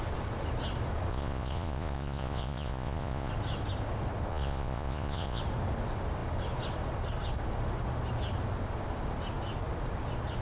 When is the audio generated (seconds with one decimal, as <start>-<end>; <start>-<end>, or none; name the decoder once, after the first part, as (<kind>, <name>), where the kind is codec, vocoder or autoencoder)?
1.1-3.3 (vocoder, Vocos); 4.3-5.4